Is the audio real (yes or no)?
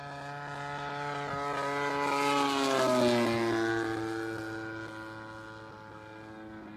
yes